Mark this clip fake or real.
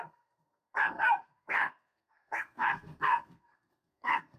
fake